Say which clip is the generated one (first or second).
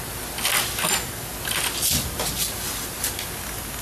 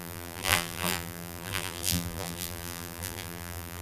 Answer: second